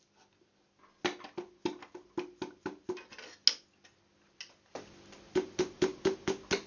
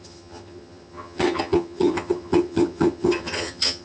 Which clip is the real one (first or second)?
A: first